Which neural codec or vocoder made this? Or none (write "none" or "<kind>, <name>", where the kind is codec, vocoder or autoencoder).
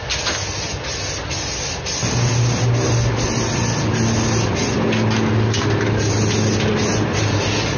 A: none